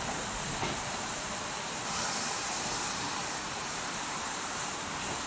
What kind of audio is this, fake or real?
fake